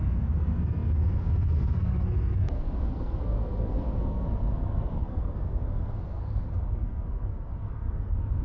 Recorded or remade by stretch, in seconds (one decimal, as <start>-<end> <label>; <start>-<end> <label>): 0.0-8.4 remade